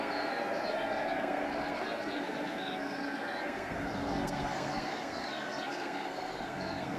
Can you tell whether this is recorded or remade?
remade